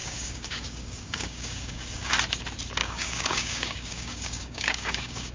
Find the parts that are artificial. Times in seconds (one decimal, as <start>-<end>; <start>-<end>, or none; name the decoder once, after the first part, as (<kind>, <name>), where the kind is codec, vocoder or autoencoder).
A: 0.0-2.1 (codec, DAC); 2.8-5.3